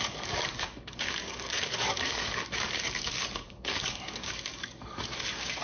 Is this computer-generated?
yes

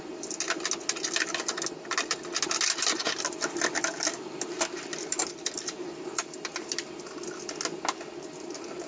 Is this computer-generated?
no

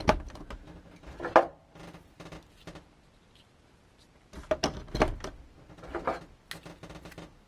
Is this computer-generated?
no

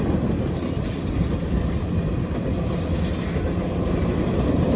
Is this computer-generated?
no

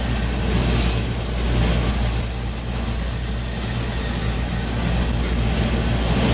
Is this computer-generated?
no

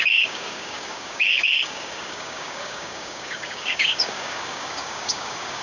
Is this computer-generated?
yes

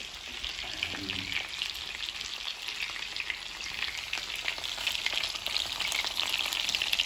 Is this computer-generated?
no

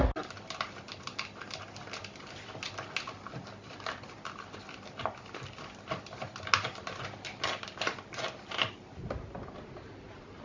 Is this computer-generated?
no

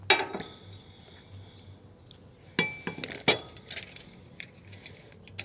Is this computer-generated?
no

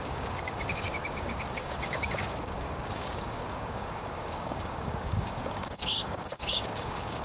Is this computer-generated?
yes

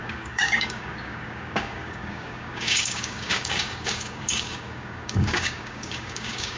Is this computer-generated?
yes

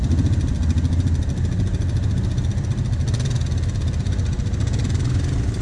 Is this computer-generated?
no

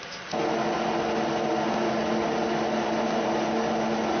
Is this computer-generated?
no